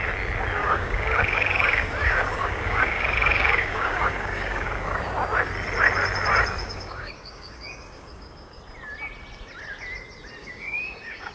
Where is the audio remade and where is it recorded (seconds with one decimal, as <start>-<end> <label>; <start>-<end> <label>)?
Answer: 0.0-0.6 recorded; 0.6-5.0 remade; 5.0-6.6 recorded; 6.6-8.6 remade; 8.6-10.4 recorded; 10.4-11.3 remade